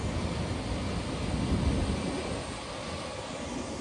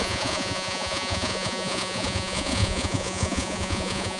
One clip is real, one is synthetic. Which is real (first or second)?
first